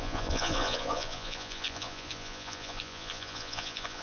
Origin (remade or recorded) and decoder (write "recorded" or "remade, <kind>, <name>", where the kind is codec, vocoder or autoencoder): remade, vocoder, Vocos